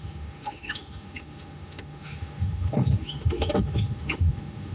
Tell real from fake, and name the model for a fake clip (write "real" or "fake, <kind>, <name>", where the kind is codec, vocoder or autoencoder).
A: fake, autoencoder, DAC-VAE